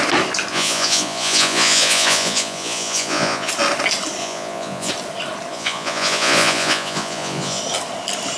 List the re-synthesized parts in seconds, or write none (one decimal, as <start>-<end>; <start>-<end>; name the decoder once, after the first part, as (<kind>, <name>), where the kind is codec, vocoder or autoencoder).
0.5-3.5 (vocoder, Vocos); 4.2-4.9; 5.5-7.6